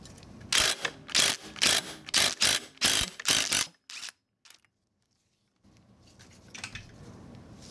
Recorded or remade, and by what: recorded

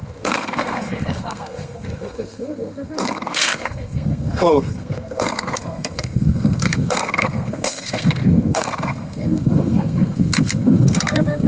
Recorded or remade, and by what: remade, codec, SNAC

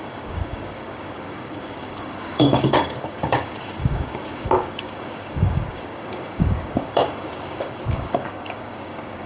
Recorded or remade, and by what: remade, codec, DAC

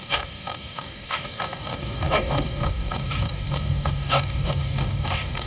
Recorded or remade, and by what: remade, codec, DAC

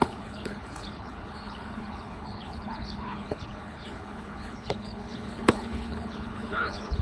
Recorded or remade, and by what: remade, codec, HILCodec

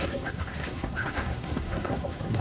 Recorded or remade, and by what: remade, codec, SNAC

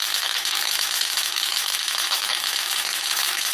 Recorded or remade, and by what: remade, autoencoder, DAC-VAE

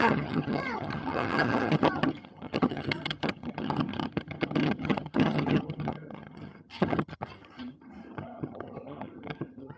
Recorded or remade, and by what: remade, vocoder, HiFi-GAN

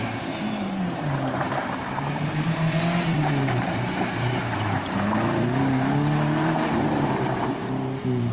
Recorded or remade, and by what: remade, vocoder, BigVGAN v2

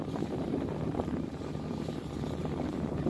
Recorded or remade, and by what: remade, vocoder, BigVGAN v2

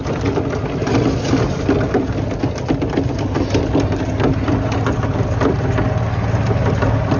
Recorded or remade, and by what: recorded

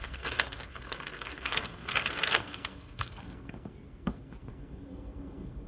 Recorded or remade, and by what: remade, codec, SNAC